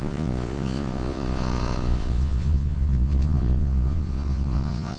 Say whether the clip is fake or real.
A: fake